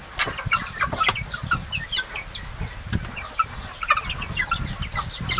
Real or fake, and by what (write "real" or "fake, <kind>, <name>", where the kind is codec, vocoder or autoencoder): real